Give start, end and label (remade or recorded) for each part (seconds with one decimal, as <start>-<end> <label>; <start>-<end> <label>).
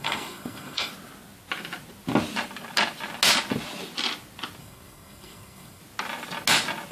0.0-0.9 remade; 0.9-4.6 recorded; 4.6-5.8 remade; 5.8-6.9 recorded